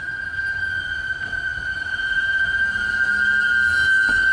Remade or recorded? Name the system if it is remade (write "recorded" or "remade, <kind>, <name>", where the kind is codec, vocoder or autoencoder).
recorded